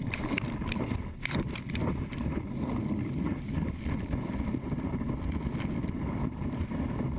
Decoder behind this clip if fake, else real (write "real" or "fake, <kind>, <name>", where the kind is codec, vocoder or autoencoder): fake, vocoder, BigVGAN v2